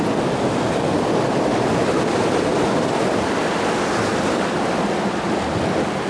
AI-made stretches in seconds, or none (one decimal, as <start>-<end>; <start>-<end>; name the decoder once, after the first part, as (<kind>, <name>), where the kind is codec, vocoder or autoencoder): none